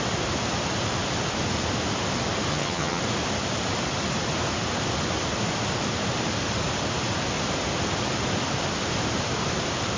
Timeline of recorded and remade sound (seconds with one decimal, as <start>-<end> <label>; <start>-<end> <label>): 0.0-2.5 recorded; 2.5-3.0 remade; 3.0-10.0 recorded